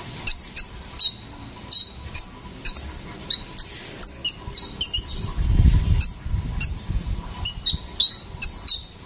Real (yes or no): yes